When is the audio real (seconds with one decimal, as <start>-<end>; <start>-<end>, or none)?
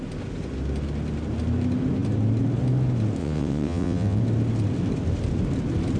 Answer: 0.0-3.2; 4.2-6.0